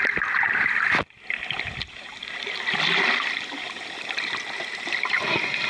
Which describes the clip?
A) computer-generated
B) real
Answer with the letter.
B